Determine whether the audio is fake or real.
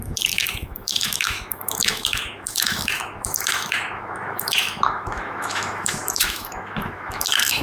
fake